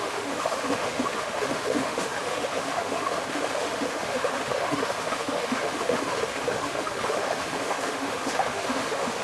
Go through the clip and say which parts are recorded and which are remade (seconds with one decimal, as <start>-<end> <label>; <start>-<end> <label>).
0.0-9.2 remade